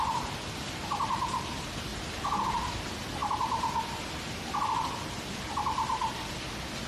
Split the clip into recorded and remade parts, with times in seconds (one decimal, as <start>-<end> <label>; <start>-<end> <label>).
0.0-1.9 recorded; 1.9-2.6 remade; 2.6-6.9 recorded

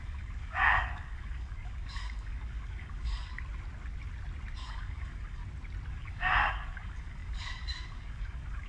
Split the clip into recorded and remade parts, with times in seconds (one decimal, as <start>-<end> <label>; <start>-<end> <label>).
0.0-3.3 remade; 3.3-4.6 recorded; 4.6-5.4 remade; 5.4-5.9 recorded; 5.9-8.7 remade

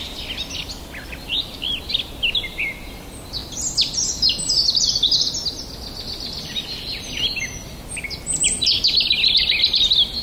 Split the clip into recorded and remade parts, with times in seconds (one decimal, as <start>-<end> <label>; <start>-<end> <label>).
0.0-10.2 recorded

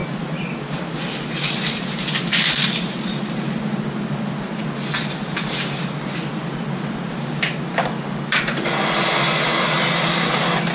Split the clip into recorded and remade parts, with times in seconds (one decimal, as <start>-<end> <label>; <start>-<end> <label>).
0.0-10.7 recorded